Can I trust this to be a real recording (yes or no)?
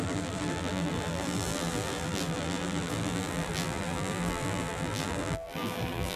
no